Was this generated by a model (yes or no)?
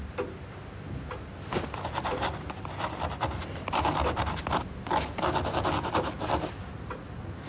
no